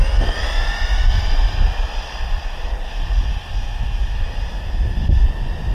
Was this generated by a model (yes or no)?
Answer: no